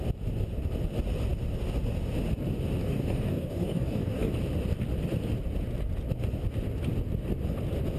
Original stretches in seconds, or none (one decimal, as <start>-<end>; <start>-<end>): 0.0-2.8; 4.3-8.0